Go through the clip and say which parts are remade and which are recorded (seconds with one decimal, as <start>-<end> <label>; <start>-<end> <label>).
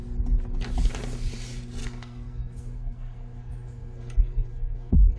0.0-1.8 recorded; 1.8-5.2 remade